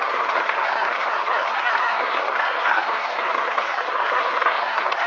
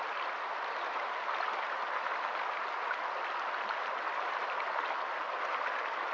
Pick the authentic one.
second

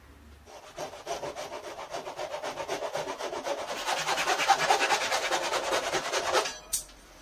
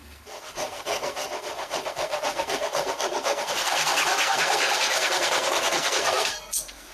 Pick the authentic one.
first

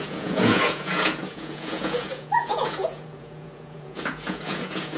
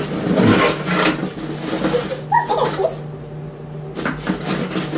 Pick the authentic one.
second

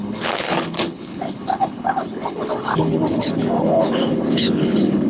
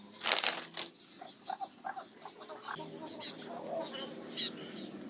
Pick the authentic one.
second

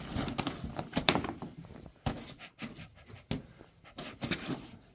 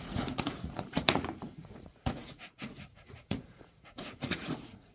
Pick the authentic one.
first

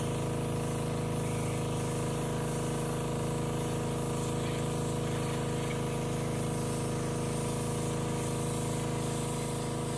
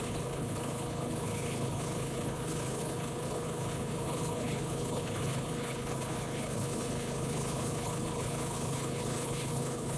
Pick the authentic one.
first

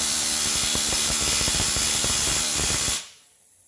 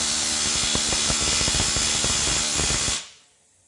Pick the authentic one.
second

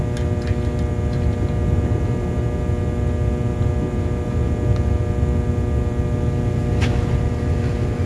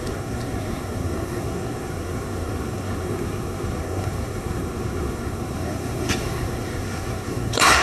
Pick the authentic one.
first